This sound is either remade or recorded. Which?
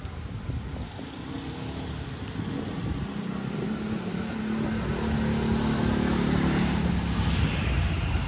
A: recorded